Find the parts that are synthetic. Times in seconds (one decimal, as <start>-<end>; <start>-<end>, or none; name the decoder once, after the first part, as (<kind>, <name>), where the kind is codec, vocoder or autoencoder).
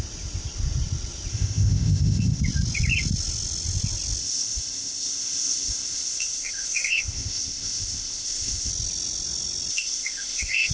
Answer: 1.3-2.4 (codec, ZipCodec); 4.2-8.7; 9.7-10.7